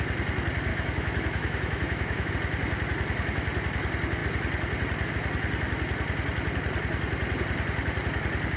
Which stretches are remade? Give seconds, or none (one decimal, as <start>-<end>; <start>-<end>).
0.7-2.3